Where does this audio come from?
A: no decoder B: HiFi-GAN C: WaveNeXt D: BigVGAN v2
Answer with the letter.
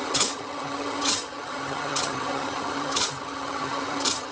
B